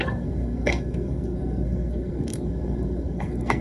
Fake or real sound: fake